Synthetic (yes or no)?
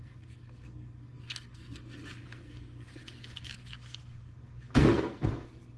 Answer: yes